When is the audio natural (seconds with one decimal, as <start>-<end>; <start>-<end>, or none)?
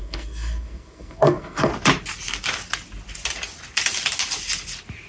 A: 1.7-5.1